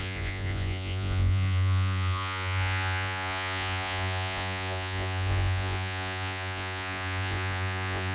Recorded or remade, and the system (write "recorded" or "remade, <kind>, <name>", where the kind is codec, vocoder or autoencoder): remade, vocoder, Vocos